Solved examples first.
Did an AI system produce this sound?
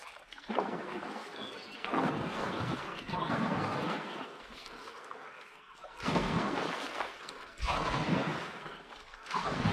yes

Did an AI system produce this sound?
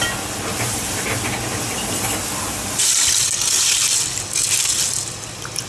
no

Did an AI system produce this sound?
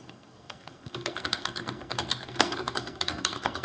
yes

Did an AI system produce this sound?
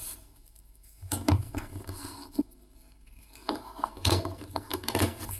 yes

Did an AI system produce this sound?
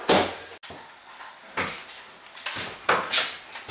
no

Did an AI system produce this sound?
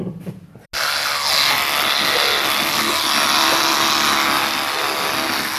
no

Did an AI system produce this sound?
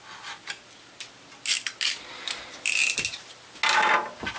no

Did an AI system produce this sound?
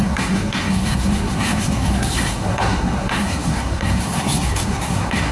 yes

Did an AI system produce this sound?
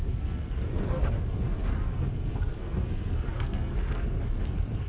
yes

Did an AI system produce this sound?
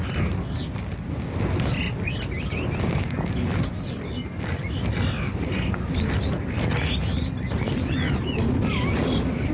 no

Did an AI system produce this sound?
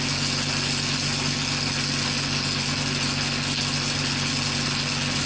no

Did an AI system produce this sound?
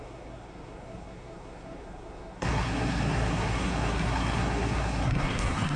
yes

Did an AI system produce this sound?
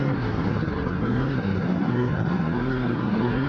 yes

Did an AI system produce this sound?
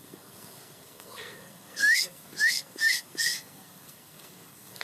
yes